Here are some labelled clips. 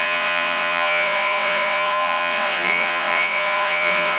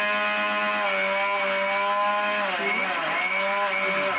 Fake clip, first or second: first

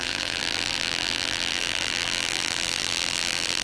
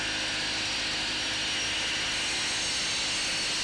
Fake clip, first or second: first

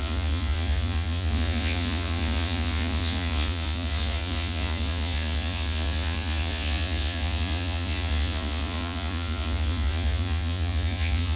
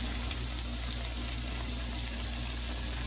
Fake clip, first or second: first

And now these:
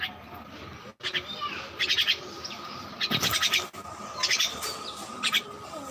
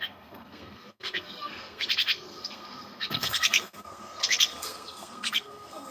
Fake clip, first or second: second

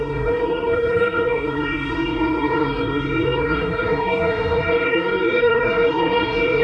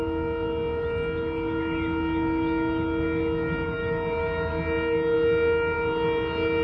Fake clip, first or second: first